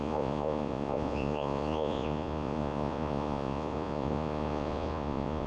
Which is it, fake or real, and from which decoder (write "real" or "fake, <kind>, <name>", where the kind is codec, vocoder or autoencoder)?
fake, vocoder, Vocos